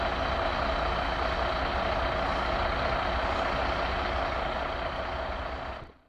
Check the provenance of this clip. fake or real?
real